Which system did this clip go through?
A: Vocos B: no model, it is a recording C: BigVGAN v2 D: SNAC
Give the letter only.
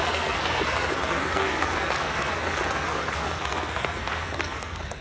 D